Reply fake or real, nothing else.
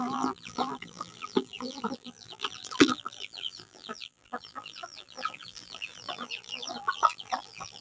fake